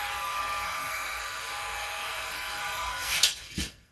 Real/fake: fake